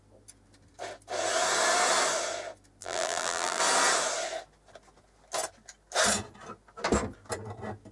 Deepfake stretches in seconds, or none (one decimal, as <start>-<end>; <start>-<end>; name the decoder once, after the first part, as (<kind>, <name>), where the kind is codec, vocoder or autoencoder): 2.8-3.6 (vocoder, BigVGAN v2)